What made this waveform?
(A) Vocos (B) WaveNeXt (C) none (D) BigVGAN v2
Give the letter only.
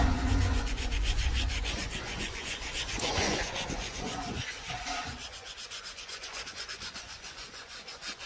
A